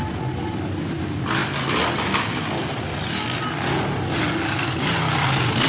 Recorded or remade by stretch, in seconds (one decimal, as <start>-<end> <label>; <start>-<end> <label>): 0.0-5.7 recorded

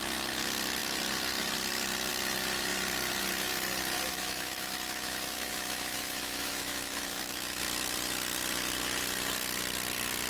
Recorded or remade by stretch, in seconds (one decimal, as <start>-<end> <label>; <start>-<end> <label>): 0.0-4.1 recorded; 4.1-7.6 remade; 7.6-10.3 recorded

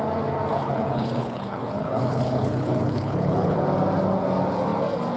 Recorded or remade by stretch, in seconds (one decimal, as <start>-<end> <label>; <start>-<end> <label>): 0.0-0.5 recorded; 0.5-3.6 remade; 3.6-5.2 recorded

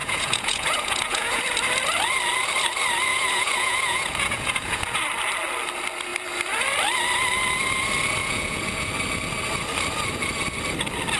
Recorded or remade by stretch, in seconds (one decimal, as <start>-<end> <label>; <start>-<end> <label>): 0.0-1.4 remade; 1.4-3.1 recorded; 3.1-5.0 remade; 5.0-8.2 recorded; 8.2-8.9 remade; 8.9-11.2 recorded

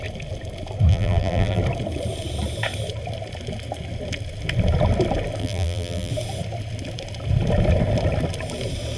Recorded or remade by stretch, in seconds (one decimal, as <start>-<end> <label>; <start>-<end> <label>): 0.0-0.9 recorded; 0.9-1.6 remade; 1.6-5.4 recorded; 5.4-6.1 remade; 6.1-9.0 recorded